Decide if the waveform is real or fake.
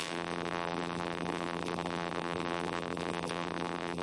fake